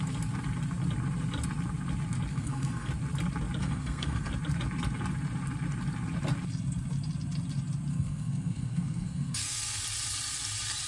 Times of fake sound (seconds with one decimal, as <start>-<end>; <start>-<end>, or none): 2.3-2.9; 3.6-4.3; 7.9-9.8